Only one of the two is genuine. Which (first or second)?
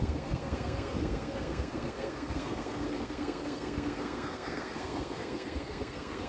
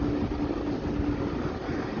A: second